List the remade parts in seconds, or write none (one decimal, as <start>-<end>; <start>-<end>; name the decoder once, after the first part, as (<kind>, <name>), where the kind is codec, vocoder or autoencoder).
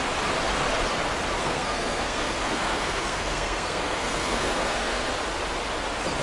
1.4-5.1 (codec, SNAC)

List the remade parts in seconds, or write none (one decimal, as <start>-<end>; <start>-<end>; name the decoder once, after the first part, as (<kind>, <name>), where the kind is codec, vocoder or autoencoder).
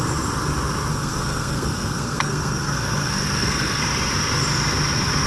0.9-3.8 (codec, SNAC)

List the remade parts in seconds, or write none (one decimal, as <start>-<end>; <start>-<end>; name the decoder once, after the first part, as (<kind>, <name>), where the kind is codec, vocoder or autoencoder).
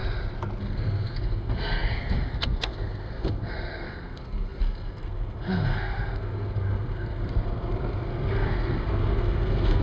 0.6-9.8 (codec, SNAC)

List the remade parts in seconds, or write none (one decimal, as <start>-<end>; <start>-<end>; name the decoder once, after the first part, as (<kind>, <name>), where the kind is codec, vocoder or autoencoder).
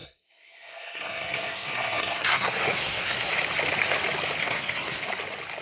0.0-3.3 (codec, SNAC); 4.4-5.0